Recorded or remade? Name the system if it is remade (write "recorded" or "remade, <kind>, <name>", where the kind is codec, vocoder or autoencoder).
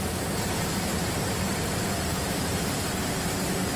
remade, vocoder, BigVGAN v2